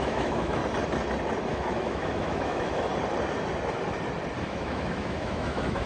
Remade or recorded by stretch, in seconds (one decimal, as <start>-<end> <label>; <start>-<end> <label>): 0.0-0.6 remade; 0.6-1.5 recorded; 1.5-2.9 remade; 2.9-4.4 recorded; 4.4-5.9 remade